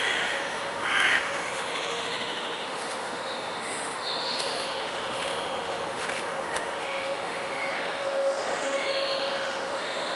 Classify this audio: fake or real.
fake